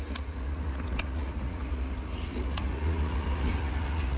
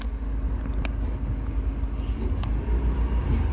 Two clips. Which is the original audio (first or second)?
second